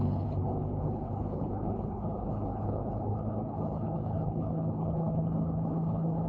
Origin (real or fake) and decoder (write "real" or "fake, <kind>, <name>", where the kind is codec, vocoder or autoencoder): fake, codec, HILCodec